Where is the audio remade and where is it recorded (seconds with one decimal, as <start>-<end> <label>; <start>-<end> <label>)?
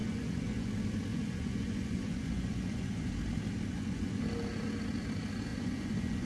0.0-0.7 remade; 0.7-1.1 recorded; 1.1-3.1 remade; 3.1-3.7 recorded; 3.7-4.2 remade; 4.2-5.5 recorded; 5.5-6.3 remade